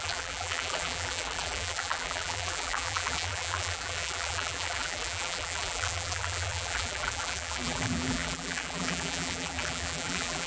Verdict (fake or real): fake